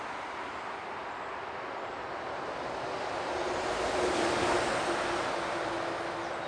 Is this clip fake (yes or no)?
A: no